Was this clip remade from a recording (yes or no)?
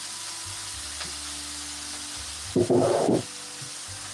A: no